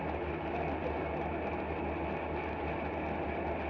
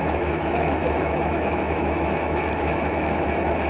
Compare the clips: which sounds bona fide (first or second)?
first